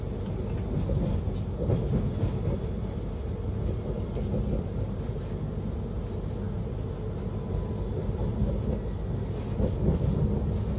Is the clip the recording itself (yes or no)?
yes